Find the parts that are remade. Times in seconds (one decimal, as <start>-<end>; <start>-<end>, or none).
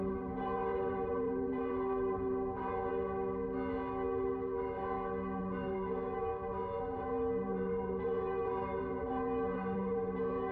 0.0-2.9; 5.4-6.3; 6.8-10.5